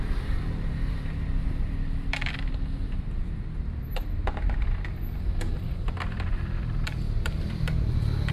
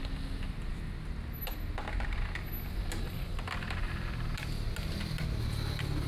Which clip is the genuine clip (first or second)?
second